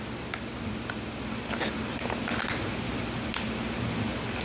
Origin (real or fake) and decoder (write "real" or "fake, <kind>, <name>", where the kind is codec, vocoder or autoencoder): real